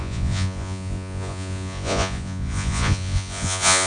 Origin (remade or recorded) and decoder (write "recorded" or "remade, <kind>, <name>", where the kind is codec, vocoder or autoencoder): remade, vocoder, Vocos